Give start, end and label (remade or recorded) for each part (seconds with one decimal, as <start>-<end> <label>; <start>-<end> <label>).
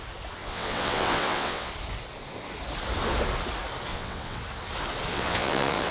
0.0-0.4 recorded; 0.4-1.7 remade; 1.7-3.9 recorded; 3.9-4.4 remade; 4.4-5.1 recorded; 5.1-5.9 remade